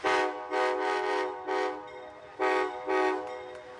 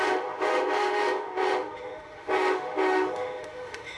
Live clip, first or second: first